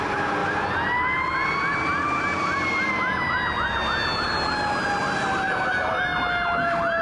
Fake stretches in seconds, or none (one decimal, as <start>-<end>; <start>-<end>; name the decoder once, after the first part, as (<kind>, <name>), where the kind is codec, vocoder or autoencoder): none